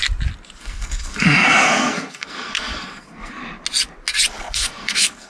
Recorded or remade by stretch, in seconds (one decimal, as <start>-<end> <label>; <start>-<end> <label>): 0.0-0.6 recorded; 0.6-3.4 remade; 3.4-4.4 recorded; 4.4-5.3 remade